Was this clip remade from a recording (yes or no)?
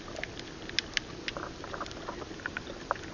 no